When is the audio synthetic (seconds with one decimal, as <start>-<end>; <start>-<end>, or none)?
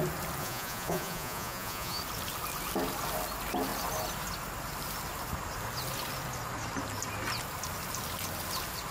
0.4-2.0